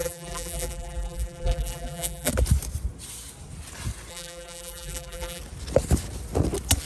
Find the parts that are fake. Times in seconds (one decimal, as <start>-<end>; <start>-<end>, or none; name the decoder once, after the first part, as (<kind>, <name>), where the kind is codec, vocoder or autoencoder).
0.0-2.3 (vocoder, BigVGAN v2); 4.1-5.4